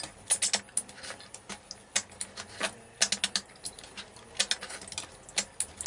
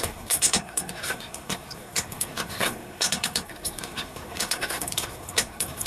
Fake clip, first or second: second